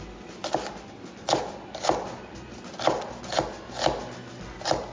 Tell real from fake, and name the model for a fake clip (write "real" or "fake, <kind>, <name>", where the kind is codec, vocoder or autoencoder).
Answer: real